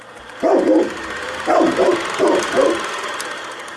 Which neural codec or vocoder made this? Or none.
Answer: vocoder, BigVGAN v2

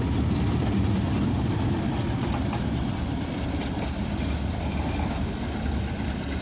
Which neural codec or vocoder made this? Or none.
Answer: vocoder, BigVGAN v2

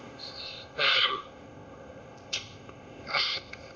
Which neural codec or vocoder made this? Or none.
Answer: codec, ZipCodec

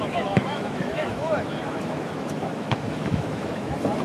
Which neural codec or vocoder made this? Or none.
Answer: autoencoder, DAC-VAE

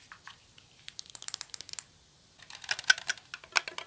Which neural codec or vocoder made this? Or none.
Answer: none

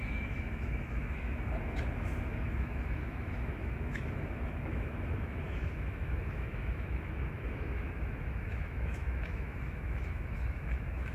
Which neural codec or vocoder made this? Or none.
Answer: autoencoder, DAC-VAE